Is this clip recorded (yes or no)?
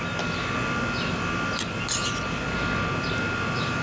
yes